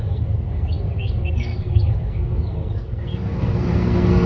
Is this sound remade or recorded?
remade